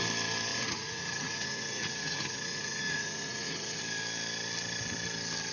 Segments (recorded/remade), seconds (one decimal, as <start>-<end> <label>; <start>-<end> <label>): 0.0-0.5 recorded; 0.5-3.8 remade; 3.8-5.5 recorded